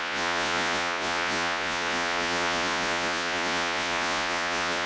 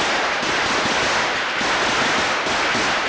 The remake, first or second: first